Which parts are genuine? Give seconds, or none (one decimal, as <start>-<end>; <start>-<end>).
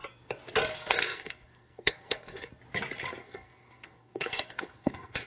0.0-0.7; 2.5-3.2